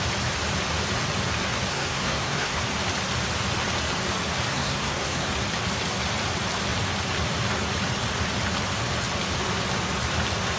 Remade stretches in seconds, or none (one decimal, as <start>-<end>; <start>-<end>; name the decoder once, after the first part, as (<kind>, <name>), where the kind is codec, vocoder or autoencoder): 1.7-2.6 (codec, SNAC); 4.5-5.3